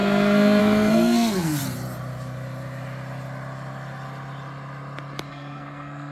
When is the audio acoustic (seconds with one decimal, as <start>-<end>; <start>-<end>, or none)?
1.6-5.3